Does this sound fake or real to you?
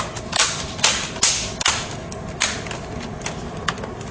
real